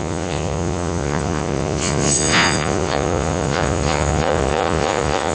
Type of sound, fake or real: fake